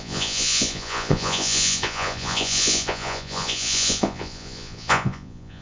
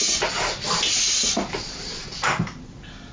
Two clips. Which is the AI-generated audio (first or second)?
first